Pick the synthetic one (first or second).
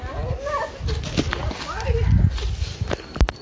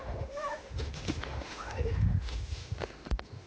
second